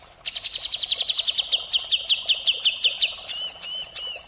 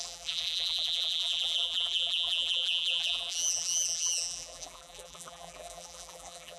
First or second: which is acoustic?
first